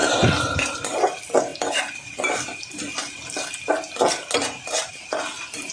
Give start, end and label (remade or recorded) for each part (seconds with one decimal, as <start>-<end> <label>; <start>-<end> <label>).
0.0-5.7 recorded

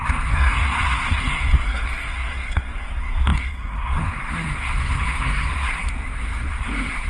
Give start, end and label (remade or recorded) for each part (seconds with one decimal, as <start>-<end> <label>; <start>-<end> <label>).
0.0-7.1 remade

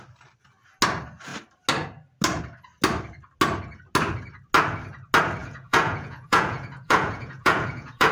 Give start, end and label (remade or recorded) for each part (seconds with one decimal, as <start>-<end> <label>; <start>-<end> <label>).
0.0-5.4 recorded; 5.4-8.1 remade